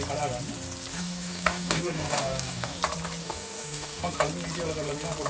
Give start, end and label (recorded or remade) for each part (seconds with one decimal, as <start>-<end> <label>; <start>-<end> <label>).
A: 0.0-0.9 recorded; 0.9-2.8 remade; 2.8-3.2 recorded; 3.2-4.0 remade; 4.0-5.3 recorded